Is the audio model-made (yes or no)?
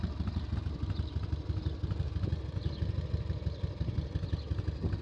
no